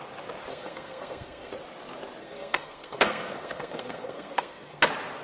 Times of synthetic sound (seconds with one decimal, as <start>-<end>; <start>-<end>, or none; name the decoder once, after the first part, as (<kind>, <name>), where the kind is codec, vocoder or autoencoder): 0.5-1.5 (codec, SNAC); 2.2-4.8